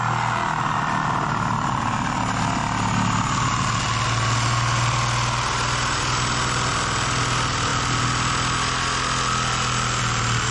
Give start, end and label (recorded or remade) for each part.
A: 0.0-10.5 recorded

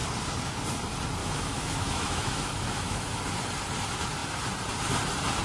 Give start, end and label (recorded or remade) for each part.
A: 0.0-1.2 recorded; 1.2-3.2 remade; 3.2-5.4 recorded

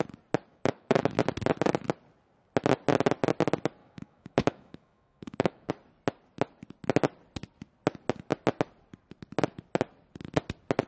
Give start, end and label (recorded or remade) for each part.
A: 0.0-0.5 recorded; 0.5-1.1 remade; 1.1-3.8 recorded; 3.8-5.7 remade; 5.7-10.9 recorded